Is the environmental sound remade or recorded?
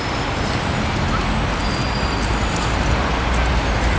recorded